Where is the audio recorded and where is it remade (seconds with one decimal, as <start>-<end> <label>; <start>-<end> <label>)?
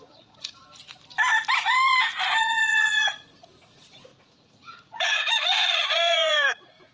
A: 0.0-0.6 remade; 0.6-2.4 recorded; 2.4-6.9 remade